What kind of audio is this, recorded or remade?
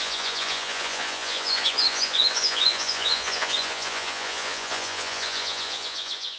remade